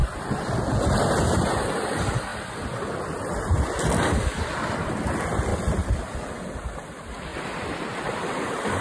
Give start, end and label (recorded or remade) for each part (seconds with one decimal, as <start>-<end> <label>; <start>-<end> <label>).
0.0-0.8 remade; 0.8-5.5 recorded; 5.5-6.3 remade; 6.3-7.3 recorded; 7.3-8.8 remade